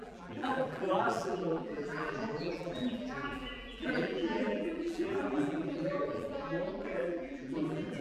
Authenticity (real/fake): fake